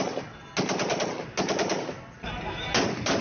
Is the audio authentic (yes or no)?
yes